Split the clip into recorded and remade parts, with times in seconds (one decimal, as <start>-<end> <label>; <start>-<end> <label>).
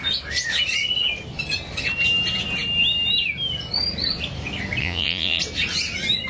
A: 0.0-4.8 recorded; 4.8-5.4 remade; 5.4-6.3 recorded